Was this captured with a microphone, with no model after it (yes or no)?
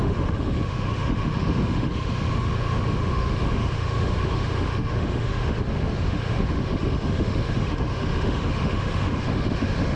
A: no